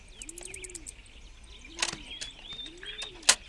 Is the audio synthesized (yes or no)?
no